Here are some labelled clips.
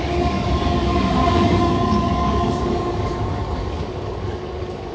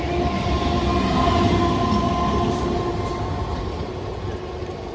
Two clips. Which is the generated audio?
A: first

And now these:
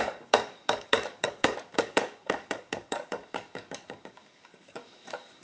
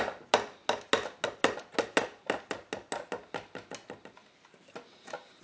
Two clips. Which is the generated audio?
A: first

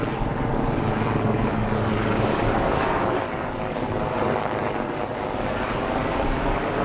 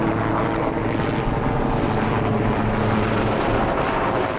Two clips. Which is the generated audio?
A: first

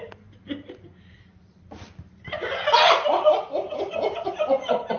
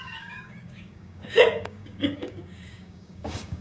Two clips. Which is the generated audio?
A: second